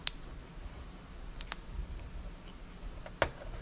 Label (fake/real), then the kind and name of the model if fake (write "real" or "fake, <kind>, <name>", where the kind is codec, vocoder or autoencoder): real